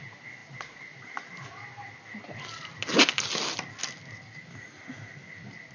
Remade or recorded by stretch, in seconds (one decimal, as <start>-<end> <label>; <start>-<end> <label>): 0.0-5.7 recorded

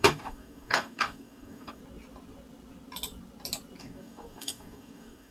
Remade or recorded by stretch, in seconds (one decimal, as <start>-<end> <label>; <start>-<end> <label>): 0.0-1.8 remade; 1.8-3.8 recorded; 3.8-5.3 remade

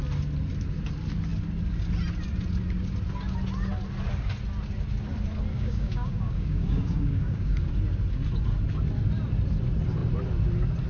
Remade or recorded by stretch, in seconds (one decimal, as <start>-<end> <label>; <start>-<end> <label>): 0.0-5.5 recorded; 5.5-7.7 remade; 7.7-10.9 recorded

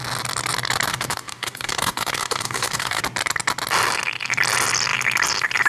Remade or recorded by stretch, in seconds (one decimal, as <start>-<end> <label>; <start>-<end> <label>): 0.0-0.9 recorded; 0.9-3.0 remade; 3.0-5.7 recorded

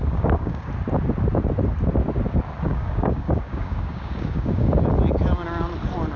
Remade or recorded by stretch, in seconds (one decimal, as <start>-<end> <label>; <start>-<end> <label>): 0.0-0.7 remade; 0.7-2.7 recorded; 2.7-4.7 remade; 4.7-6.2 recorded